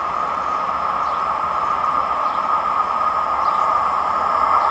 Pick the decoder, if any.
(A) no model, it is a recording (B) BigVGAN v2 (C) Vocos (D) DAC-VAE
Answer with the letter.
A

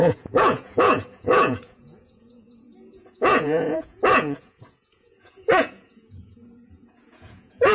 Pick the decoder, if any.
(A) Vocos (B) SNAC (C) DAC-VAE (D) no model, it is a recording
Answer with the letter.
A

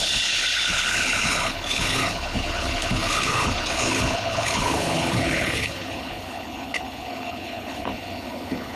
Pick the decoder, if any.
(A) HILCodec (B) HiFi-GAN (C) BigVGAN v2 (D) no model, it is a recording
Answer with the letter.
A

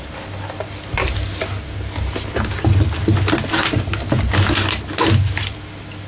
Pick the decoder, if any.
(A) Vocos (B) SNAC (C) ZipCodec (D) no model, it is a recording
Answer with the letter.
D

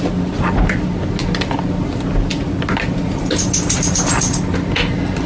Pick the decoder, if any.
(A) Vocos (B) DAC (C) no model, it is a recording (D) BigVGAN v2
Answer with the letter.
C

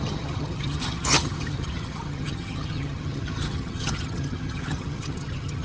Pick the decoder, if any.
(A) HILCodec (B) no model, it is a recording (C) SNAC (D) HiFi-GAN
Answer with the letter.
D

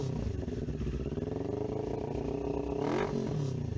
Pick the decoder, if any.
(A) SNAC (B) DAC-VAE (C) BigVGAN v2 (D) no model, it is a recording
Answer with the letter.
D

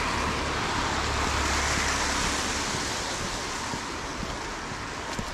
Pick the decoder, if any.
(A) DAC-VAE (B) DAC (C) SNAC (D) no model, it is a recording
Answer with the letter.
D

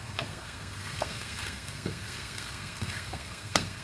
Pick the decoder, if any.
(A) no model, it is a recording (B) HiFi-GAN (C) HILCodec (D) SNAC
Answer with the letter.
D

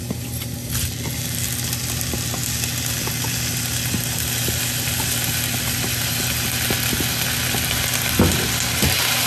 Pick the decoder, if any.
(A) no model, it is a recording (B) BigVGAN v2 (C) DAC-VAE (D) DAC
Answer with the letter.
A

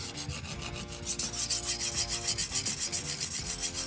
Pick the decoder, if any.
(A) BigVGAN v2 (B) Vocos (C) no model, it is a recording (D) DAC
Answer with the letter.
C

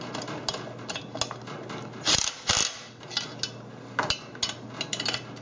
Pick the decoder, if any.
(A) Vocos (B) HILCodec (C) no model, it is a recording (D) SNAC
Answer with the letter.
C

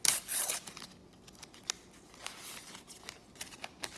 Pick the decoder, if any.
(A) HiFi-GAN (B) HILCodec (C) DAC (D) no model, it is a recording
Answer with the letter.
D